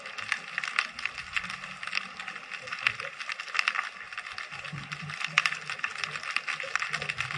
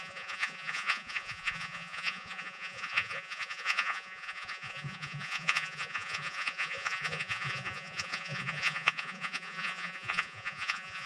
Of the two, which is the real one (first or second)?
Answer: first